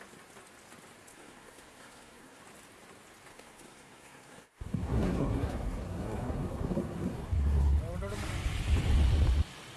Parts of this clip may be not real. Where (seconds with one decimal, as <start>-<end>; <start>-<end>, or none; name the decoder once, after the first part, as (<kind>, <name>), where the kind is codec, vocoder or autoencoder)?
1.1-2.4 (codec, SNAC); 3.3-7.8